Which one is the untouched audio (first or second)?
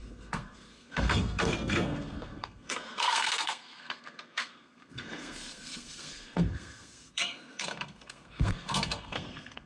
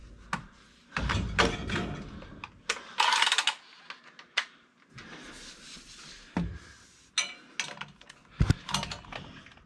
second